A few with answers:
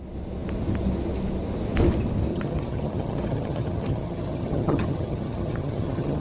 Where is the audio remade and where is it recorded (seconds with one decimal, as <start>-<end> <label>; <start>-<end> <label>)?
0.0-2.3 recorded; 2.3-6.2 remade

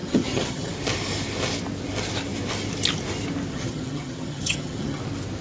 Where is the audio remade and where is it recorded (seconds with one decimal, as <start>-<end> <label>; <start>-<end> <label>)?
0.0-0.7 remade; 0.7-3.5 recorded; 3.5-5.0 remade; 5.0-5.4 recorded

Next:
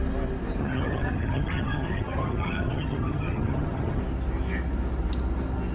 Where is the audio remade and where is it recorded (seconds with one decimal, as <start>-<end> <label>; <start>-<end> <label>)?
0.0-0.6 recorded; 0.6-4.0 remade; 4.0-5.7 recorded

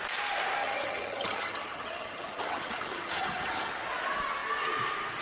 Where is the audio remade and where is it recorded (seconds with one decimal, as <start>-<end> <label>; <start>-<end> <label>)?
0.0-0.6 recorded; 0.6-3.7 remade; 3.7-5.2 recorded

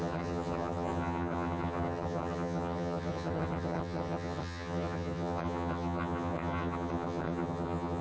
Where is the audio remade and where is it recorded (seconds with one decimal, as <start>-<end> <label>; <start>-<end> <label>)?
0.0-8.0 remade